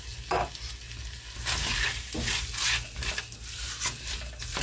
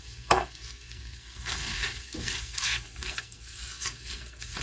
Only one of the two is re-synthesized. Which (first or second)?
second